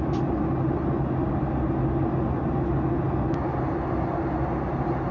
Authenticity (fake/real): real